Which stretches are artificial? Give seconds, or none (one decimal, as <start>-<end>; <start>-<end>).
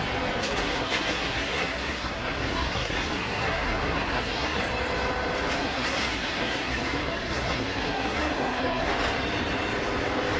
0.4-4.6; 5.6-8.9